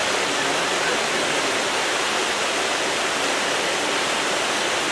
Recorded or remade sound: recorded